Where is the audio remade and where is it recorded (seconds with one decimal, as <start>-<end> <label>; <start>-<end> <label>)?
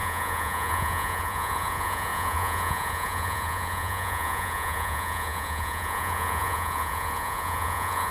0.0-8.1 remade